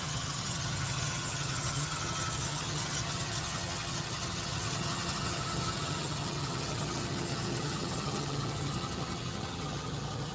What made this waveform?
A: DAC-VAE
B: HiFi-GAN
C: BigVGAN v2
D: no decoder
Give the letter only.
B